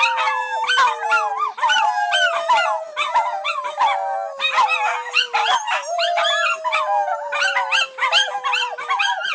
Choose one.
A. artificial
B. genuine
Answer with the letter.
B